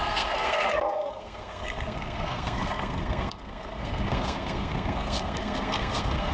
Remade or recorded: remade